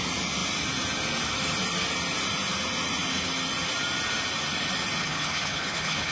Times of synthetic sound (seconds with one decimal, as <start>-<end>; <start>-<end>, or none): 5.0-6.1